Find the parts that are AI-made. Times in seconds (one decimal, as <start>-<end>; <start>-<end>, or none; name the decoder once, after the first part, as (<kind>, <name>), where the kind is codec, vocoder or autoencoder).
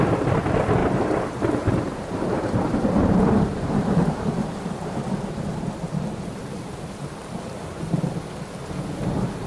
0.8-5.1 (vocoder, BigVGAN v2)